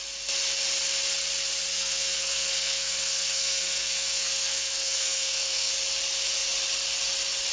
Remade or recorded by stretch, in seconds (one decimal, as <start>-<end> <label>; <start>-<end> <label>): 0.0-1.7 recorded; 1.7-5.7 remade; 5.7-7.5 recorded